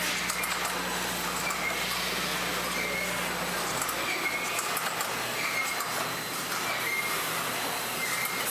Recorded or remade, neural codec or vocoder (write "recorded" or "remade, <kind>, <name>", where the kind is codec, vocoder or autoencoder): recorded